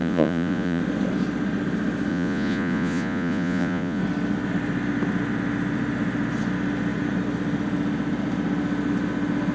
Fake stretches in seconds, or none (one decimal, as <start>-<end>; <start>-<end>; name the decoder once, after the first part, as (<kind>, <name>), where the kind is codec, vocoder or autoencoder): 0.0-0.8 (vocoder, Vocos); 2.1-4.0